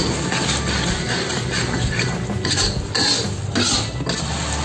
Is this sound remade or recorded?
recorded